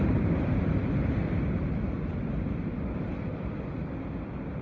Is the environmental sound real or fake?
real